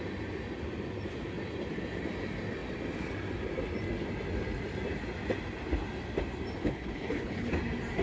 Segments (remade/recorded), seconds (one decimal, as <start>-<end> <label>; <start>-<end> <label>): 0.0-6.6 recorded; 6.6-7.5 remade; 7.5-8.0 recorded